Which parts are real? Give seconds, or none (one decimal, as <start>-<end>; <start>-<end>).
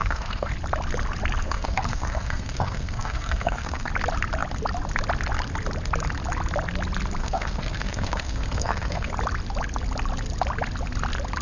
0.5-1.4; 3.9-7.2; 9.1-11.4